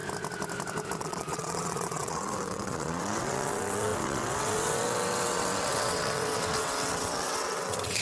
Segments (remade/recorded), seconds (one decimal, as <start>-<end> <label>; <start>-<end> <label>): 0.0-1.0 recorded; 1.0-8.0 remade